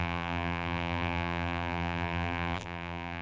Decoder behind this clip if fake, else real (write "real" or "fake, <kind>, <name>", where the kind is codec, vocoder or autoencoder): fake, vocoder, BigVGAN v2